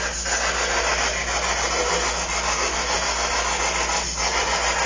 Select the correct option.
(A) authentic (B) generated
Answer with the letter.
A